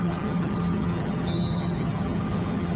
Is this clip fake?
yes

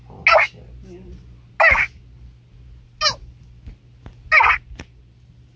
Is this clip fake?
no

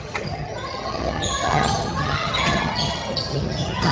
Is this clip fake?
yes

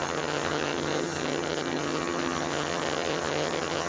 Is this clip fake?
yes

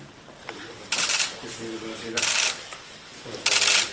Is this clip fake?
no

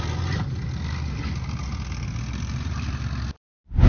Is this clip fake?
no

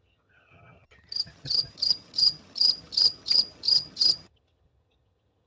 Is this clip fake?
yes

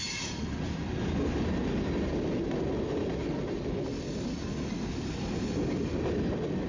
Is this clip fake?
no